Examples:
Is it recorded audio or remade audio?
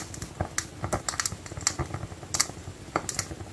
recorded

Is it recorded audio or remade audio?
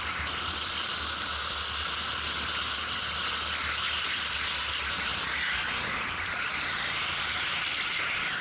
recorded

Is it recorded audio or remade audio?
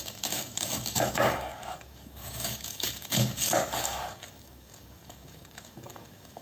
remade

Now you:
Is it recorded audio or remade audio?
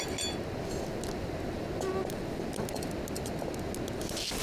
recorded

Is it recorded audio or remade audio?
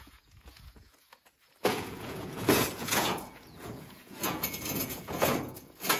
remade